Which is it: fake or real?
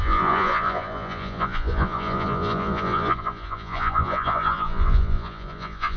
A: fake